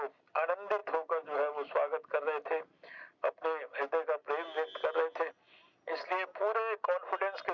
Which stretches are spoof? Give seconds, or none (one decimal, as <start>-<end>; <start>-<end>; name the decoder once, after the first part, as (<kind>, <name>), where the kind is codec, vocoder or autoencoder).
none